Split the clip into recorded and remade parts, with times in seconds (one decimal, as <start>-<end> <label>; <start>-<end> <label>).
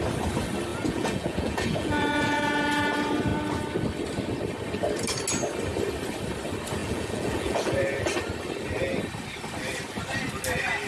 0.0-0.7 recorded; 0.7-2.4 remade; 2.4-6.8 recorded; 6.8-7.8 remade; 7.8-10.9 recorded